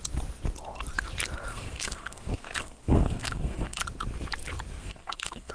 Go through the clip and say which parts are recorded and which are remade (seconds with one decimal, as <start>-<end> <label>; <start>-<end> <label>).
0.0-1.5 recorded; 1.5-3.8 remade; 3.8-4.8 recorded; 4.8-5.5 remade